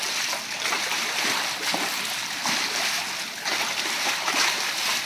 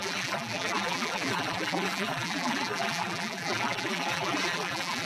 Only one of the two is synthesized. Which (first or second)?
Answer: second